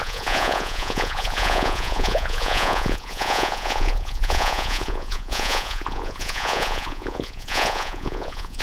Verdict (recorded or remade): remade